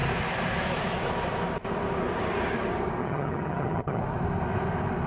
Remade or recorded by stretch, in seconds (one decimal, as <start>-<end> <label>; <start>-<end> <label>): 0.0-3.0 recorded; 3.0-4.0 remade; 4.0-5.1 recorded